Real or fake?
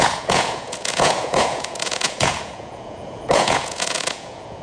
fake